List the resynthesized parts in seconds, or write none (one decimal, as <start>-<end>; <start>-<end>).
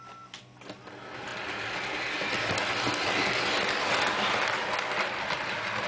none